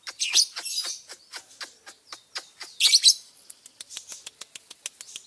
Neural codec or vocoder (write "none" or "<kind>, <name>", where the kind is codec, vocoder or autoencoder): none